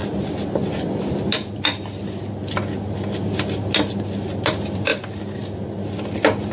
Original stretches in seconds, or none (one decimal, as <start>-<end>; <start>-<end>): 0.0-6.5